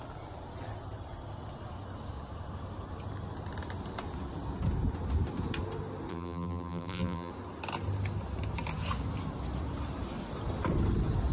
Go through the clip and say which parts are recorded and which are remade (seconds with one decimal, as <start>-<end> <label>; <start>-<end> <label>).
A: 0.0-6.1 recorded; 6.1-7.3 remade; 7.3-11.3 recorded